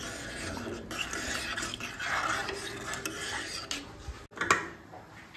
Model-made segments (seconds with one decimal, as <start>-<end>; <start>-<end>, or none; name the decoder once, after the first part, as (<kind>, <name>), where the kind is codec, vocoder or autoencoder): none